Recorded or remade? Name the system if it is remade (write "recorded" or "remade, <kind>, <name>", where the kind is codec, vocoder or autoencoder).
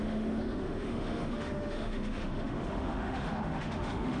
remade, autoencoder, DAC-VAE